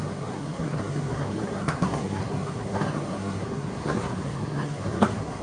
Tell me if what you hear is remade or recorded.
remade